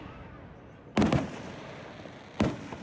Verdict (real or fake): real